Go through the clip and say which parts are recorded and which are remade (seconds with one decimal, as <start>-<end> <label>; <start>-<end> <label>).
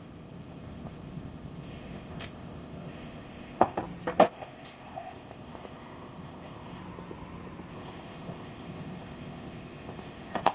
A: 0.0-3.8 remade; 3.8-4.3 recorded; 4.3-6.8 remade; 6.8-7.7 recorded; 7.7-10.5 remade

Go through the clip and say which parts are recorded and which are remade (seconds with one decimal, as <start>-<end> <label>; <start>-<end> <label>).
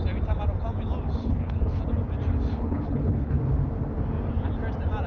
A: 0.0-1.2 recorded; 1.2-1.8 remade; 1.8-2.5 recorded; 2.5-3.4 remade; 3.4-5.1 recorded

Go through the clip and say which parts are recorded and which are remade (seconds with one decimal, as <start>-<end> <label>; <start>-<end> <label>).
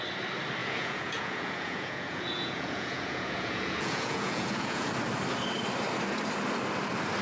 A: 0.0-0.6 recorded; 0.6-4.9 remade; 4.9-7.2 recorded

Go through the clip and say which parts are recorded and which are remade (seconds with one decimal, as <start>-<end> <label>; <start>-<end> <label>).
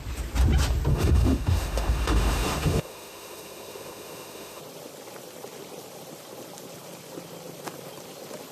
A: 0.0-0.9 recorded; 0.9-4.6 remade; 4.6-8.5 recorded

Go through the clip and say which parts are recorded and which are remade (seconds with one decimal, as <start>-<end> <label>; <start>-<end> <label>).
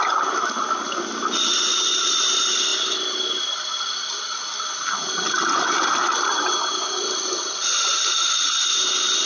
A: 0.0-9.3 recorded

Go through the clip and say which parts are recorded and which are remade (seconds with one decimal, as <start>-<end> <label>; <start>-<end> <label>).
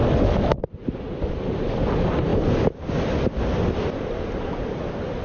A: 0.0-5.2 recorded